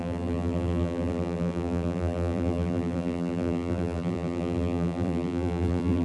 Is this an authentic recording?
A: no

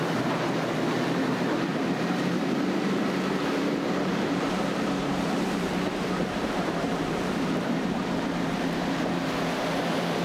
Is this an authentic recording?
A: no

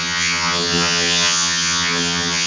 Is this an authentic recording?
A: no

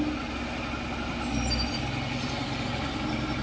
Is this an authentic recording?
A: yes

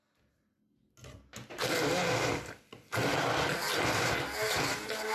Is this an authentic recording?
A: yes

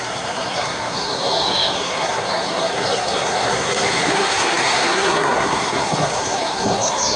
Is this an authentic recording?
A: no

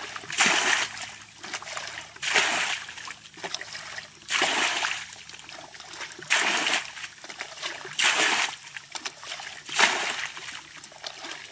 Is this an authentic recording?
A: yes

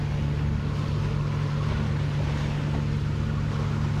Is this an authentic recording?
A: yes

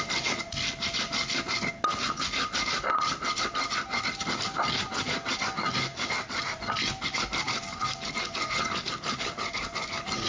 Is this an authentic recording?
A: yes